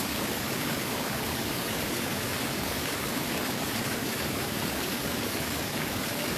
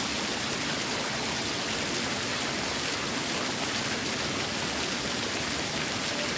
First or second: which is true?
second